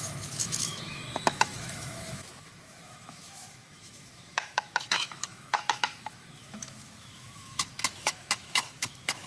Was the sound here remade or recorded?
remade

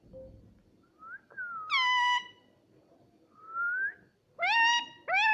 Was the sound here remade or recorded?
recorded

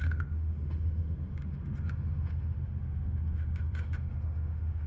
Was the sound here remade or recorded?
remade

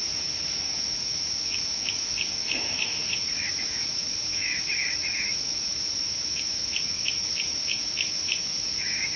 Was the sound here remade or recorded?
remade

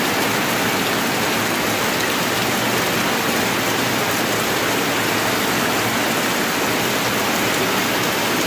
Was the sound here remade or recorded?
recorded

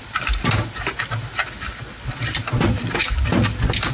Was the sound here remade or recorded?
recorded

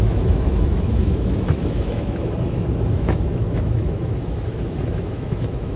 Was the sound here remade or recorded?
remade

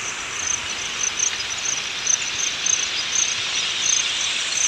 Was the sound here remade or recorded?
recorded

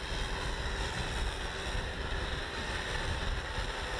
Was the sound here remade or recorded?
recorded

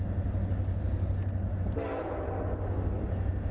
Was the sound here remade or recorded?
recorded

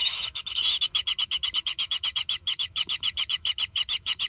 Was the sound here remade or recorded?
remade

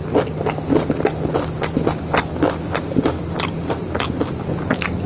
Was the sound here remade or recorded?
recorded